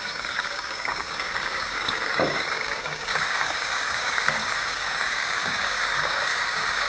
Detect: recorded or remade remade